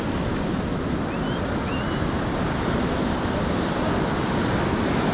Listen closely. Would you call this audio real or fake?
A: real